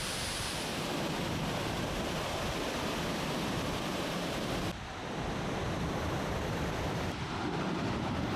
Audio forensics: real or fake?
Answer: fake